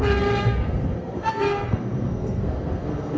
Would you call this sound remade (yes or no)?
yes